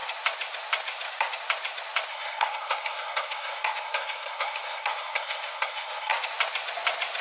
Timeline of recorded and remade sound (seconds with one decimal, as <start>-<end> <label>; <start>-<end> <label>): 0.0-2.1 recorded; 2.1-6.1 remade; 6.1-7.2 recorded